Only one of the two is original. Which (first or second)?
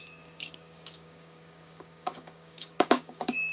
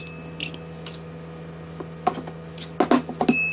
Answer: second